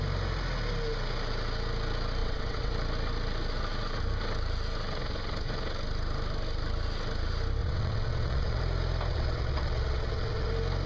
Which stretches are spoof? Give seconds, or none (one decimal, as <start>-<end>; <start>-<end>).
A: 2.2-2.7; 7.6-8.6; 9.1-10.5